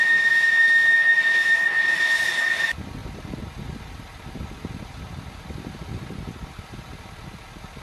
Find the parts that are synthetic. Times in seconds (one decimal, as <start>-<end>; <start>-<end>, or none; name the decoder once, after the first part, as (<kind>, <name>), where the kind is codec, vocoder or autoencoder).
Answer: 1.1-1.7 (vocoder, BigVGAN v2); 3.0-7.8